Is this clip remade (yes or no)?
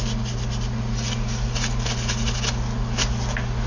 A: no